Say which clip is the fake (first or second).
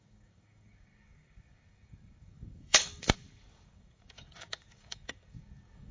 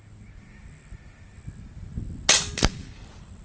first